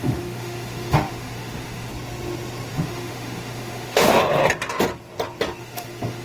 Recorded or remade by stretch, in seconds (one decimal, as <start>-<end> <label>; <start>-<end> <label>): 0.0-1.9 remade; 1.9-2.7 recorded; 2.7-4.2 remade; 4.2-5.6 recorded; 5.6-6.2 remade